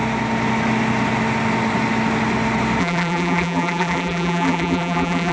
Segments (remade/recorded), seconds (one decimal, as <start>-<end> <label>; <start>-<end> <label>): 0.0-2.8 recorded; 2.8-5.3 remade